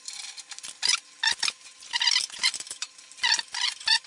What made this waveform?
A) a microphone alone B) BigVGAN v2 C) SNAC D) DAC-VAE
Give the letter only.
A